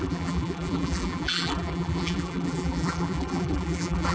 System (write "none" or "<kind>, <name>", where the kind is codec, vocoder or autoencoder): vocoder, BigVGAN v2